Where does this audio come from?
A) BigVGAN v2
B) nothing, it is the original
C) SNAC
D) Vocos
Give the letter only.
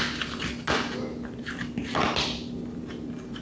B